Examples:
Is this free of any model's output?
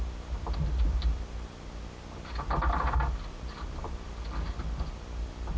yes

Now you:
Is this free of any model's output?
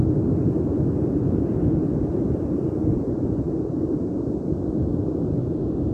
yes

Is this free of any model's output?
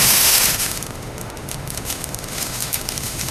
no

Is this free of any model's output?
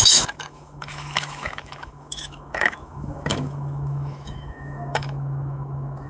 no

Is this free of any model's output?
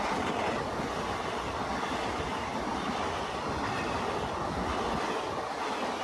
yes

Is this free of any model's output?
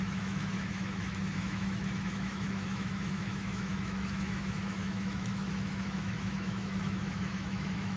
no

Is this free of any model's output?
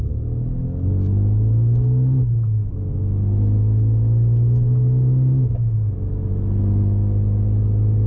yes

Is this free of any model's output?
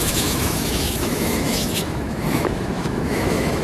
no